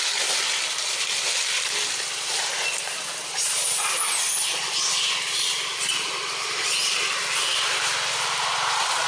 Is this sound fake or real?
real